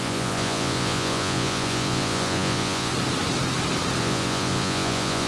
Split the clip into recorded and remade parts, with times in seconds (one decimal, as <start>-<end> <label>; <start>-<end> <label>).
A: 0.0-2.9 remade; 2.9-4.0 recorded; 4.0-5.3 remade